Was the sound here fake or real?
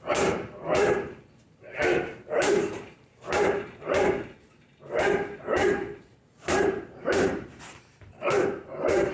fake